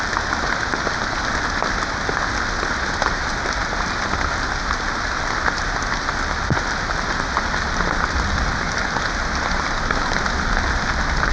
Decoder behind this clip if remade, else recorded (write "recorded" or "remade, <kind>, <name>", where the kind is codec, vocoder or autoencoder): recorded